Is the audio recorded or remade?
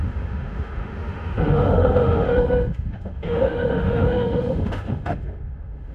remade